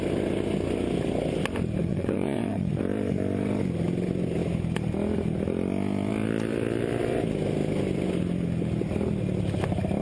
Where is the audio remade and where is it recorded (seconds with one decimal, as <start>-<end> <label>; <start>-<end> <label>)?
0.0-1.9 recorded; 1.9-2.8 remade; 2.8-10.0 recorded